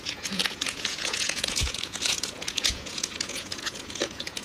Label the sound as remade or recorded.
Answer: remade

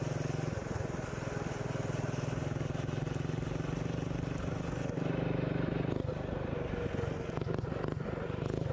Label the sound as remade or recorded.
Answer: recorded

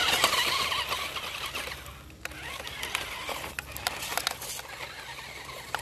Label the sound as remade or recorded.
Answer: recorded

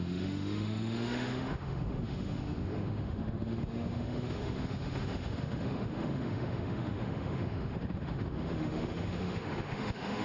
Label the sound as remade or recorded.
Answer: remade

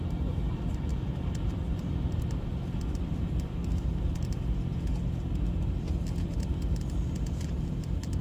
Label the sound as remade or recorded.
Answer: remade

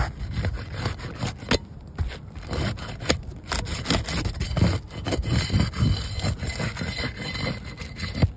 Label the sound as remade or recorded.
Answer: recorded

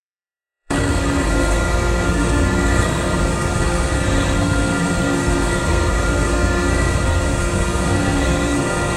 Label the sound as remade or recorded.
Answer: remade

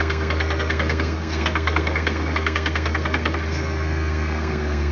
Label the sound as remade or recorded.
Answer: remade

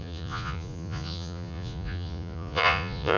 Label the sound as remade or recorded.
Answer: remade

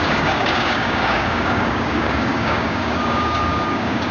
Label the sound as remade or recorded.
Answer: remade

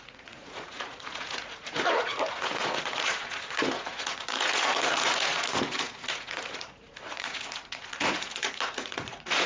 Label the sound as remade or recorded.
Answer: remade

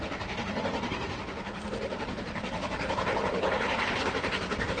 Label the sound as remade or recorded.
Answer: remade